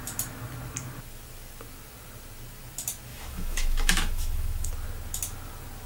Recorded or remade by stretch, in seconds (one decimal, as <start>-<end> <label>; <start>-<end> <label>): 0.0-3.1 recorded; 3.1-4.7 remade; 4.7-5.9 recorded